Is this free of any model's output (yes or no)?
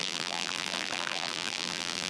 no